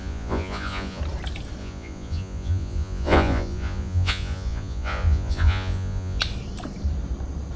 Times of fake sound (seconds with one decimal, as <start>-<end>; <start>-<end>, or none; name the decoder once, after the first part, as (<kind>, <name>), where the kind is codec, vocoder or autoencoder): 0.0-1.0 (vocoder, Vocos); 1.6-6.2